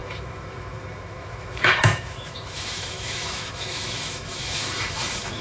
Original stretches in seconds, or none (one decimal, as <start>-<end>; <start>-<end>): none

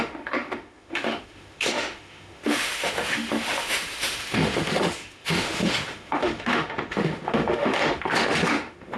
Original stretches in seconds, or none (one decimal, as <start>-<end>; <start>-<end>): none

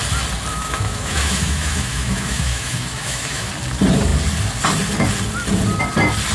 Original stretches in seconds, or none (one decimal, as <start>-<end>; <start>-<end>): 0.0-0.5; 3.5-6.3

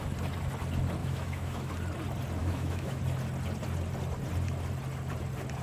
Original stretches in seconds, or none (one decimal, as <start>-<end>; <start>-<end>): 0.0-1.0; 1.7-2.4; 3.0-5.6

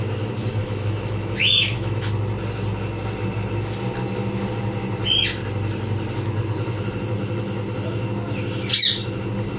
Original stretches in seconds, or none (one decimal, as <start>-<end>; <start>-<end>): 0.0-0.6; 2.1-9.6